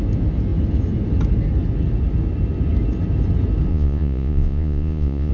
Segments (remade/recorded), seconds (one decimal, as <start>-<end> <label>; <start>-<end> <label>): 0.0-3.7 recorded; 3.7-5.3 remade